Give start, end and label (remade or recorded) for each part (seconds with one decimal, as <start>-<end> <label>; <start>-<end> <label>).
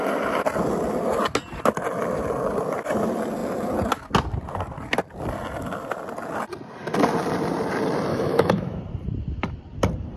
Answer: 0.0-8.1 recorded; 8.1-8.8 remade; 8.8-10.2 recorded